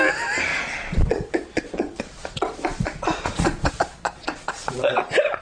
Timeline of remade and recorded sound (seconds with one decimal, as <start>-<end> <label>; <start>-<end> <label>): 0.0-0.5 recorded; 0.5-3.7 remade; 3.7-4.2 recorded; 4.2-4.9 remade; 4.9-5.4 recorded